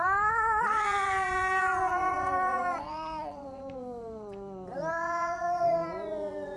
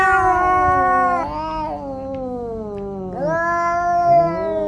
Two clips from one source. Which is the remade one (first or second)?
first